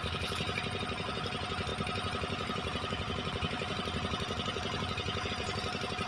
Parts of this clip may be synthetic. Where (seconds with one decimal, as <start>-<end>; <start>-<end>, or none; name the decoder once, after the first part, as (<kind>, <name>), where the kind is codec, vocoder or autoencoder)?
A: none